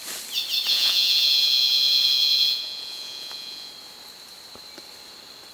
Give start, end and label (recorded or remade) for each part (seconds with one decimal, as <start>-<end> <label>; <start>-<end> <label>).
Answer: 0.0-0.7 recorded; 0.7-3.7 remade; 3.7-5.5 recorded